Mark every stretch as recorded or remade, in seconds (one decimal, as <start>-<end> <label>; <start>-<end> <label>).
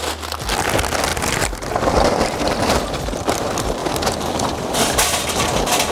0.0-1.1 recorded; 1.1-3.4 remade; 3.4-3.8 recorded; 3.8-5.3 remade; 5.3-5.9 recorded